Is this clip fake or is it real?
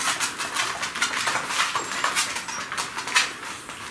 real